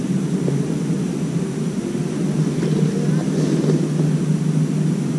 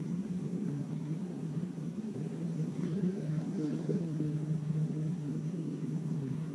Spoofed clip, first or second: second